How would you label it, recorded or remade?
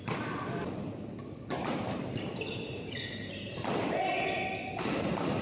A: recorded